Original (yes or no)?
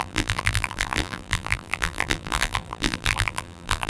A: no